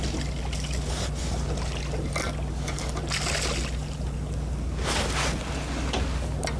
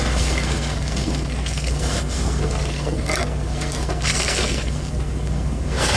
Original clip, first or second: first